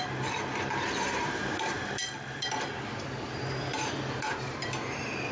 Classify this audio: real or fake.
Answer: fake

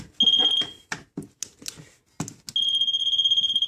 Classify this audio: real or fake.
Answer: real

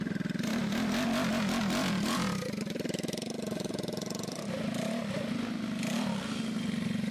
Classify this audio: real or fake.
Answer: real